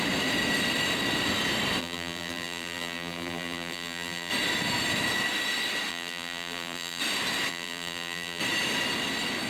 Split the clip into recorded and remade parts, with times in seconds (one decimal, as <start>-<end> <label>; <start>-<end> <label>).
0.0-1.8 recorded; 1.8-4.3 remade; 4.3-5.9 recorded; 5.9-7.0 remade; 7.0-7.5 recorded; 7.5-8.4 remade; 8.4-9.5 recorded